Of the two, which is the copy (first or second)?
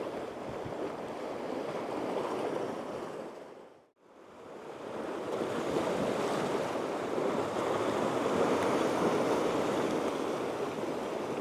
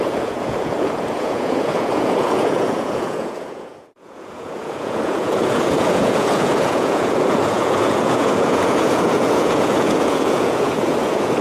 second